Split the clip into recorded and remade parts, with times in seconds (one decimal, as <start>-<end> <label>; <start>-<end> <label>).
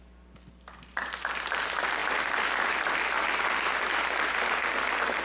0.0-5.2 recorded